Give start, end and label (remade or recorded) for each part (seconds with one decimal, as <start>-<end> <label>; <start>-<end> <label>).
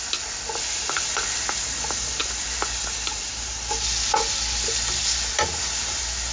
0.0-6.3 recorded